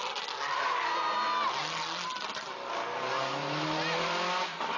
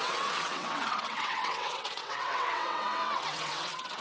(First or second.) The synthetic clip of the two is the second